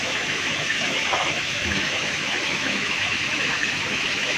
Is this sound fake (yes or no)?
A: yes